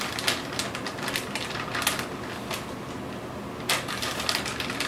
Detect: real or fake real